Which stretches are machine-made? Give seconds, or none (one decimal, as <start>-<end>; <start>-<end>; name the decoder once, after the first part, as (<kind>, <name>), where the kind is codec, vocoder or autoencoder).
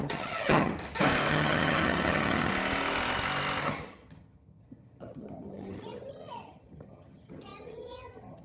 0.0-0.7 (vocoder, HiFi-GAN); 1.3-2.5; 3.6-8.4